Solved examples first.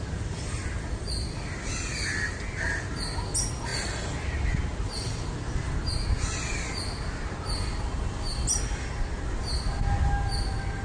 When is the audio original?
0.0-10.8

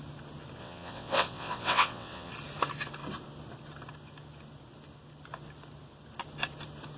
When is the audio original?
0.0-0.6; 2.3-7.0

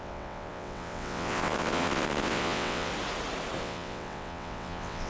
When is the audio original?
2.9-3.6